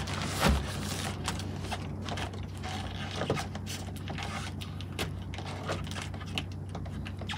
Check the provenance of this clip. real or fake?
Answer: real